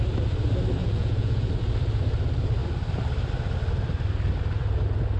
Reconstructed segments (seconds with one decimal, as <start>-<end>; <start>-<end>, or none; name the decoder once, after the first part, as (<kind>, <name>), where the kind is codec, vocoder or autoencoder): 0.8-1.5 (vocoder, Vocos)